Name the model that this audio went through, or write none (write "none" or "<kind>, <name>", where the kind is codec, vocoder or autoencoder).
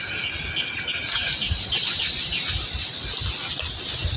none